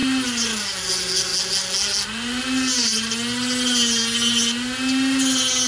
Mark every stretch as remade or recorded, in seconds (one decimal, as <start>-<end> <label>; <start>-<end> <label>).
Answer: 0.0-5.7 recorded